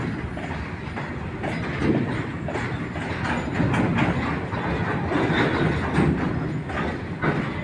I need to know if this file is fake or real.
real